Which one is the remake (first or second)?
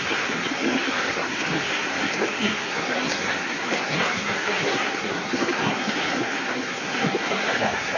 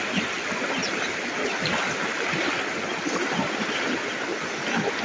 first